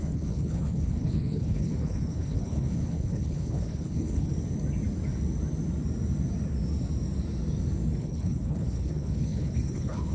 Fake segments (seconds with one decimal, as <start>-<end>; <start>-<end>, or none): 0.0-4.3; 8.0-10.1

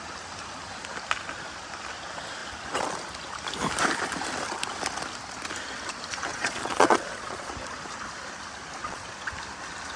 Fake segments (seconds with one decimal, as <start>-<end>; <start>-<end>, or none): 6.3-7.5; 8.8-9.3

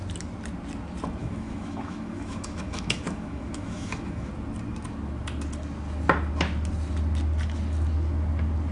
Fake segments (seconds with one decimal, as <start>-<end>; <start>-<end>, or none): 1.2-4.3